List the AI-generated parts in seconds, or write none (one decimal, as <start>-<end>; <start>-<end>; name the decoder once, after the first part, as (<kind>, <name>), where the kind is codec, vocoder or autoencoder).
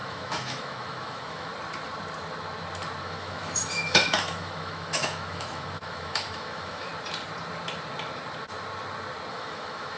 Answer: 0.0-1.5 (autoencoder, DAC-VAE); 3.0-6.9; 9.3-10.0